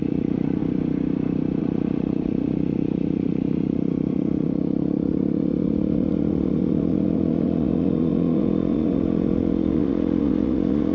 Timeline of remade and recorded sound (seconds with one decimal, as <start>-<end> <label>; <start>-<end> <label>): 0.0-0.6 remade; 0.6-1.6 recorded; 1.6-10.9 remade